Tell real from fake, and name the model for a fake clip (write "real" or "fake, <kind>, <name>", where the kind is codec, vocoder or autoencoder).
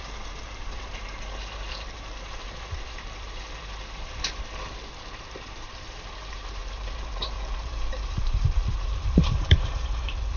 fake, vocoder, BigVGAN v2